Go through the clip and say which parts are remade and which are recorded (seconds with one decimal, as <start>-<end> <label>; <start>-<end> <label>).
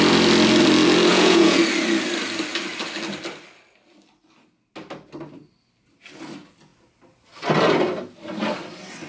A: 0.0-1.1 recorded; 1.1-1.6 remade; 1.6-9.1 recorded